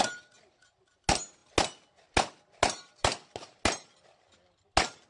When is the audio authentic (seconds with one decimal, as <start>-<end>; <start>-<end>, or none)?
0.0-5.1